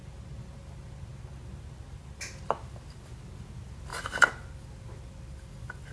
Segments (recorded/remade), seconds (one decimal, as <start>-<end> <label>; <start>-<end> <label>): 0.0-5.9 recorded